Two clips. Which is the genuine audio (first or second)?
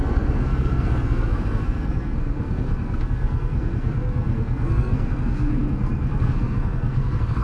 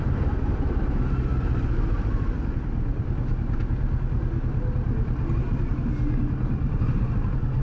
second